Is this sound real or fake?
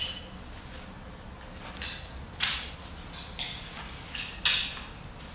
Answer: real